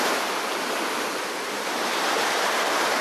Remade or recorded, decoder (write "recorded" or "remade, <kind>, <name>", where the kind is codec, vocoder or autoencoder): remade, vocoder, BigVGAN v2